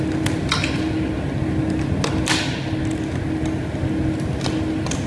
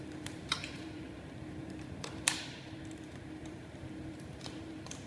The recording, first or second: first